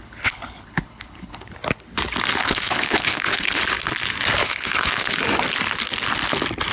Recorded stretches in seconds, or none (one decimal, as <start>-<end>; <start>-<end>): 1.5-2.4; 3.6-4.4; 5.2-6.7